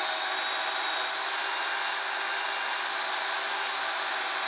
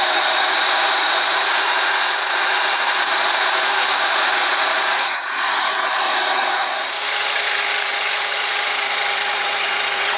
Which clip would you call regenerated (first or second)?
second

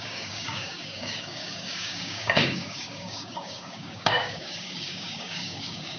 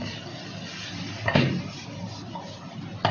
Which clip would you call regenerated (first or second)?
first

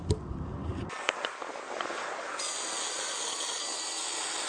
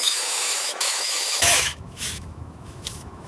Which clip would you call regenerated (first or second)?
second